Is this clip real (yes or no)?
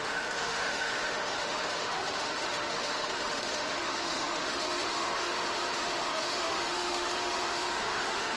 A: no